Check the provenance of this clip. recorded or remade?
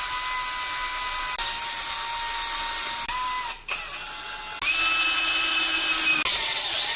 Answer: recorded